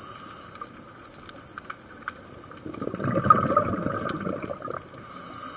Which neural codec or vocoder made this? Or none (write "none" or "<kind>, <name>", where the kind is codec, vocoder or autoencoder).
none